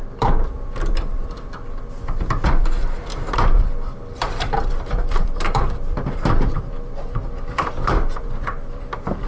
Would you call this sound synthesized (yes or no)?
yes